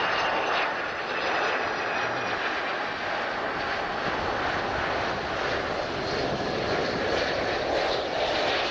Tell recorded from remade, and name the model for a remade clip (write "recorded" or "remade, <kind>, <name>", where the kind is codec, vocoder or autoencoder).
recorded